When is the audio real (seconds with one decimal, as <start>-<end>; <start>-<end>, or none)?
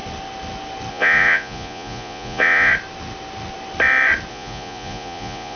0.0-0.9; 2.7-4.3